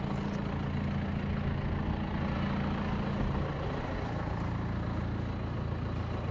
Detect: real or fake real